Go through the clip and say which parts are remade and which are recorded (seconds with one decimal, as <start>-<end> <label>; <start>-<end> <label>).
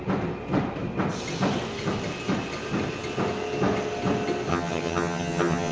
0.0-4.5 recorded; 4.5-5.7 remade